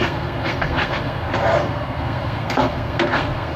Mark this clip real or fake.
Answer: fake